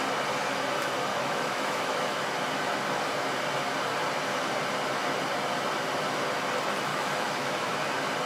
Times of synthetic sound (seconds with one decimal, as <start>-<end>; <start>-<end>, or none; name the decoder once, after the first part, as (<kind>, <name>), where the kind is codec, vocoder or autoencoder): 1.1-2.2 (autoencoder, DAC-VAE); 6.9-7.7